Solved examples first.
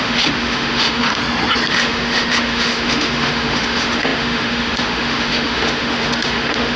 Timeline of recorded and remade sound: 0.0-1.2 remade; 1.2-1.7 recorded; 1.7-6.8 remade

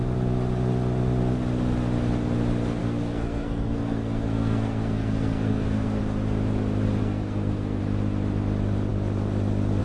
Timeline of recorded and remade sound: 0.0-2.8 recorded; 2.8-6.0 remade; 6.0-7.0 recorded; 7.0-7.8 remade; 7.8-9.8 recorded

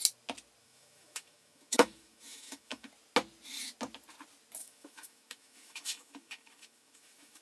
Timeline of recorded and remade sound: 0.0-0.6 recorded; 0.6-2.9 remade; 2.9-4.6 recorded; 4.6-7.4 remade

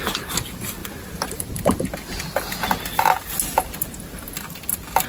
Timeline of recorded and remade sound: 0.0-5.1 recorded